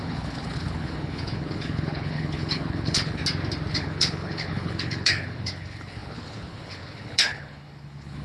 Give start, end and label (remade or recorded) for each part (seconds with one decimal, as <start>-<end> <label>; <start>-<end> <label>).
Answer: 0.0-3.2 remade; 3.2-3.7 recorded; 3.7-8.2 remade